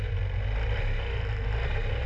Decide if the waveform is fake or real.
real